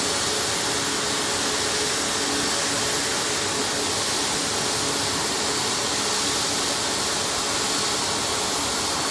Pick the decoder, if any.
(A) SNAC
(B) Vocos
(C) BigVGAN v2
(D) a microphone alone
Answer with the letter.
D